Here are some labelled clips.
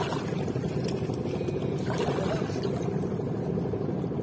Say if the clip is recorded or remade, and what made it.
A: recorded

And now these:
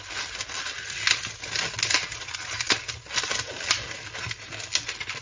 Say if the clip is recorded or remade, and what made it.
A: recorded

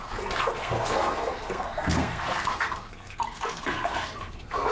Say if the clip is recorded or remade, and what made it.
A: remade, codec, SNAC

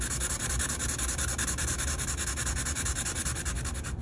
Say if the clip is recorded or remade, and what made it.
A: recorded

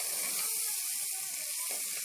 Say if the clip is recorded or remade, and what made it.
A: recorded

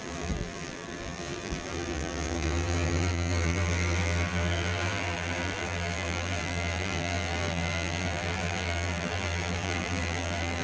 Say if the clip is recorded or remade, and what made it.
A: remade, vocoder, BigVGAN v2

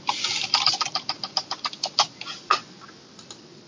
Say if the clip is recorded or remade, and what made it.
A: recorded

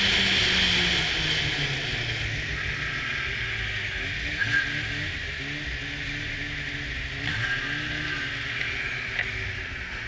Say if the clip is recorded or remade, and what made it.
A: recorded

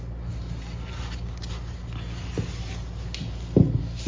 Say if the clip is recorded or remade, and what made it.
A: recorded